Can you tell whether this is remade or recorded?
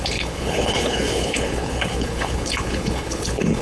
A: remade